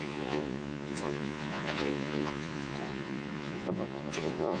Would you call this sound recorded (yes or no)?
no